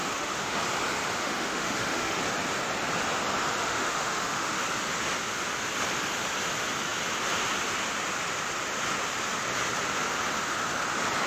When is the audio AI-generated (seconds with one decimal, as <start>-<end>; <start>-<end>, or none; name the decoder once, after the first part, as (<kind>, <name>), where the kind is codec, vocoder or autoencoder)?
0.0-0.6 (autoencoder, DAC-VAE); 1.2-2.2; 3.6-4.6